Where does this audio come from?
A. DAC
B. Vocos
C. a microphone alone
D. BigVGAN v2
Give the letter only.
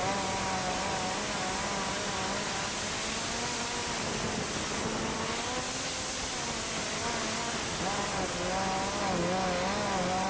C